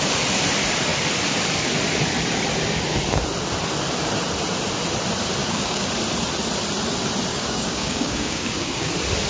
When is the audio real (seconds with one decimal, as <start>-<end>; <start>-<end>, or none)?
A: 0.0-5.4; 5.9-7.3; 8.9-9.3